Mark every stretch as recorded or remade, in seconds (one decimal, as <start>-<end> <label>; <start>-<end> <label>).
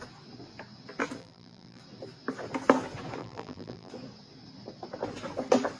0.0-1.2 recorded; 1.2-1.8 remade; 1.8-3.2 recorded; 3.2-3.9 remade; 3.9-5.8 recorded